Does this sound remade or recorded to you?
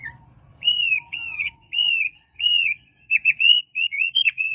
remade